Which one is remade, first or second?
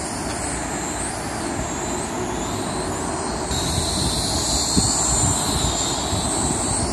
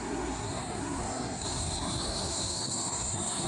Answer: second